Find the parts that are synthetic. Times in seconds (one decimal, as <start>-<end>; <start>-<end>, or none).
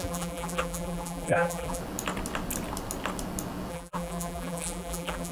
0.0-1.8; 3.7-5.3